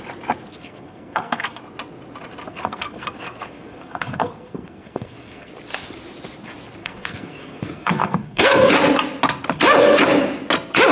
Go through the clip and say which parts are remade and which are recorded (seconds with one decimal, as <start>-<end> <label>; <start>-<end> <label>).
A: 0.0-0.5 recorded; 0.5-1.6 remade; 1.6-2.5 recorded; 2.5-5.5 remade; 5.5-6.8 recorded; 6.8-8.6 remade; 8.6-10.9 recorded